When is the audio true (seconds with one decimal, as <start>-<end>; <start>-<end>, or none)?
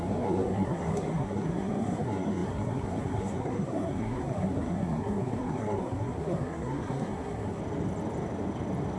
7.6-9.0